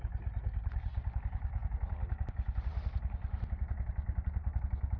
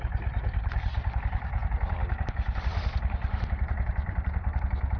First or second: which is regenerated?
second